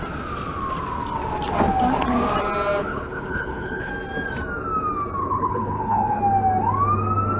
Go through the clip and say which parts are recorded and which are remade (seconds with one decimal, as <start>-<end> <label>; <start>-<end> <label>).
0.0-2.8 recorded; 2.8-3.9 remade; 3.9-5.2 recorded; 5.2-6.2 remade; 6.2-7.4 recorded